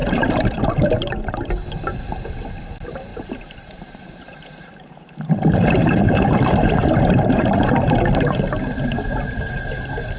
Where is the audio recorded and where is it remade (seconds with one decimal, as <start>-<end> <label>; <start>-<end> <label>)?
0.0-1.1 remade; 1.1-3.1 recorded; 3.1-7.7 remade; 7.7-10.2 recorded